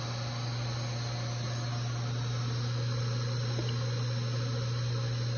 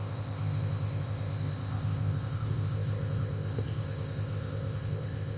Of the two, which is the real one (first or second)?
first